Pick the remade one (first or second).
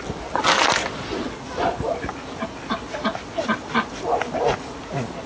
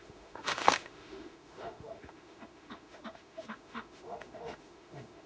second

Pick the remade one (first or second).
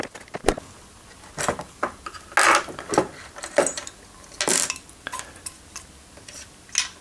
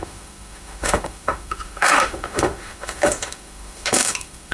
second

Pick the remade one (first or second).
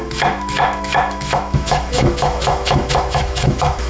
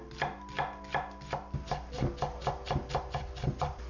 first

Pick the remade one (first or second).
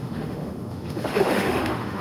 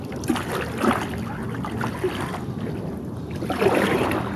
first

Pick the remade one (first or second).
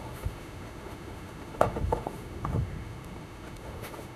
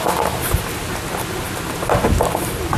first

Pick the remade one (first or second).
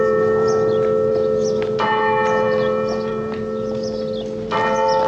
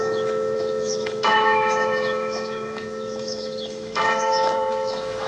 second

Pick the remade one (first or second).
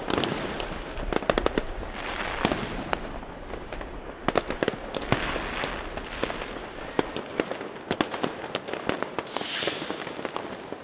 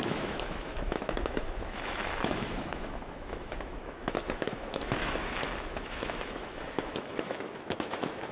second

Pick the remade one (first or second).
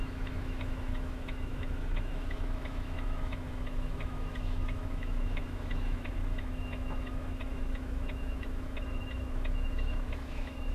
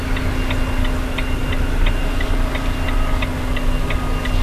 first